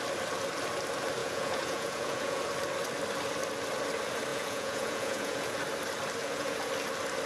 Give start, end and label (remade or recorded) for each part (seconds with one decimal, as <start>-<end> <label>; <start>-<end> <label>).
0.0-1.2 recorded; 1.2-2.4 remade; 2.4-4.3 recorded; 4.3-5.6 remade; 5.6-6.2 recorded; 6.2-6.7 remade; 6.7-7.3 recorded